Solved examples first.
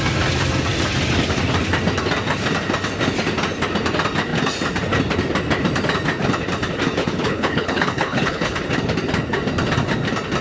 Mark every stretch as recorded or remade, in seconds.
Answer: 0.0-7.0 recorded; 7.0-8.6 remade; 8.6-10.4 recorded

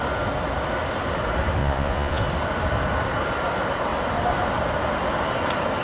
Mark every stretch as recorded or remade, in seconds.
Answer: 0.0-1.6 recorded; 1.6-2.2 remade; 2.2-5.8 recorded

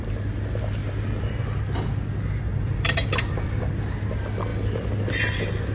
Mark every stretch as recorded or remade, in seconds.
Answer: 0.0-2.5 recorded; 2.5-3.7 remade; 3.7-5.7 recorded

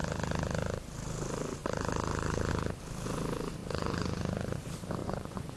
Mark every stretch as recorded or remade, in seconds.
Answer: 0.0-3.6 recorded; 3.6-4.6 remade; 4.6-5.0 recorded; 5.0-5.6 remade